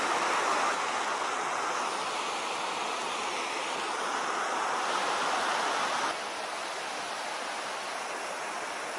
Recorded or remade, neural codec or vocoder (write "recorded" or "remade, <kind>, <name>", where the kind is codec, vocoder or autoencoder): recorded